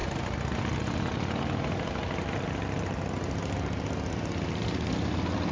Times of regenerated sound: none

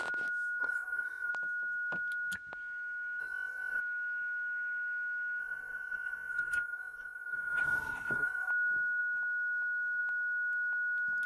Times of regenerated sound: 0.6-1.3 (codec, SNAC); 3.2-3.8; 5.4-8.5